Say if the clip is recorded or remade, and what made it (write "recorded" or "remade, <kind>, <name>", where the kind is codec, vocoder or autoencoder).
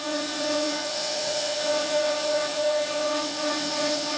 remade, vocoder, WaveNeXt